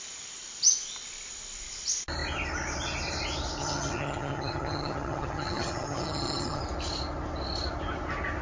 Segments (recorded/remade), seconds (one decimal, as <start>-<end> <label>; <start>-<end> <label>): 0.0-3.6 recorded; 3.6-6.6 remade; 6.6-8.4 recorded